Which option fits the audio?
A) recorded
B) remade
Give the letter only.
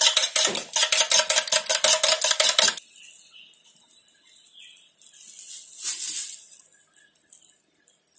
A